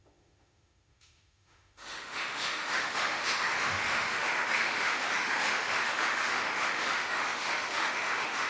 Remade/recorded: remade